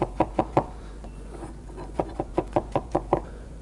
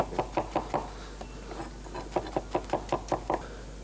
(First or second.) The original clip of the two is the second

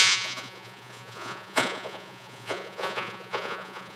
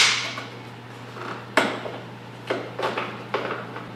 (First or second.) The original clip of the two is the second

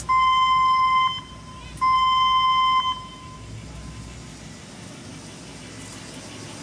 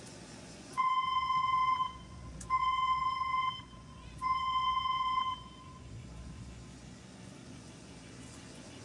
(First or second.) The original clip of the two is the first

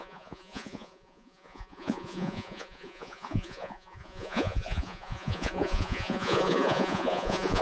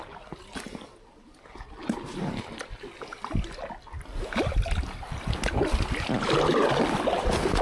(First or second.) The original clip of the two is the second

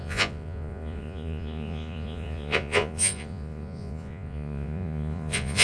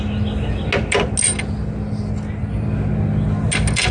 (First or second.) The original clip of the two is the second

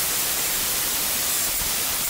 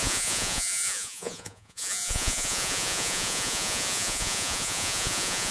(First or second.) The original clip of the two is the first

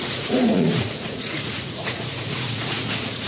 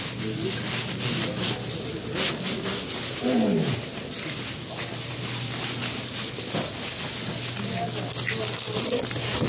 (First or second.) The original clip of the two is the second